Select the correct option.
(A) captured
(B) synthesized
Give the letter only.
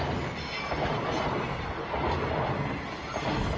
A